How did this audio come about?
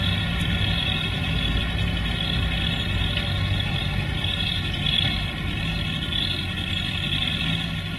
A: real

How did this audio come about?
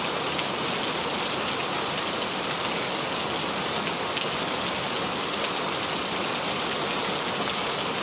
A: real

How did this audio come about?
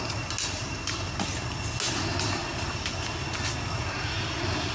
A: real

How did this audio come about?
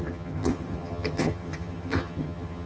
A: fake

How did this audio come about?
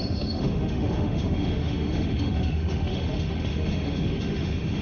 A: fake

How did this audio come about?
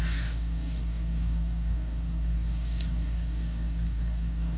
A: fake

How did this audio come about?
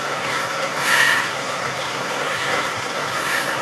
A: fake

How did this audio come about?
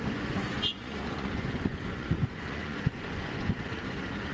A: fake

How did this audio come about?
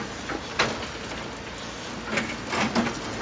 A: real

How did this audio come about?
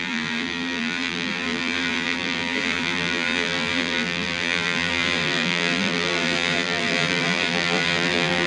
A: fake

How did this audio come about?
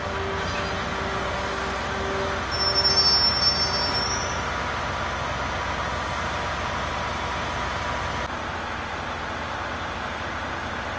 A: real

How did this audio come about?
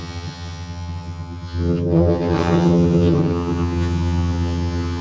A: fake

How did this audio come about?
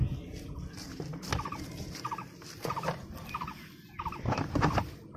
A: real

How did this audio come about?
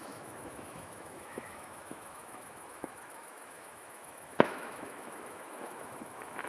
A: fake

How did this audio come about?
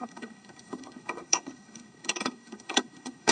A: fake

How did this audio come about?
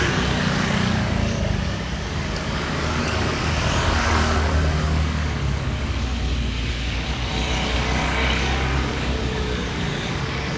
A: fake